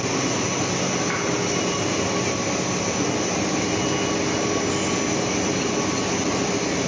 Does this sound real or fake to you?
real